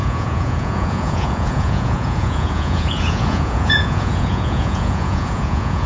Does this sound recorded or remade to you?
remade